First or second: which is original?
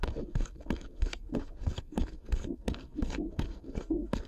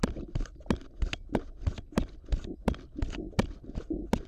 second